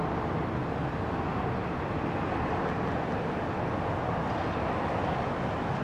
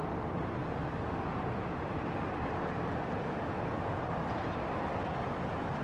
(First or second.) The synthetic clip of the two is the second